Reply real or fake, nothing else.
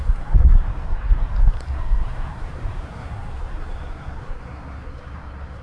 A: fake